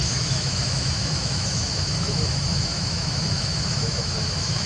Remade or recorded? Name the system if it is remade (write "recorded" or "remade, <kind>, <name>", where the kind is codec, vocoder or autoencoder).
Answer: remade, autoencoder, DAC-VAE